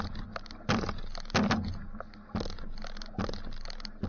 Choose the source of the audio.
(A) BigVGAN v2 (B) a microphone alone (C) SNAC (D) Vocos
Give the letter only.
B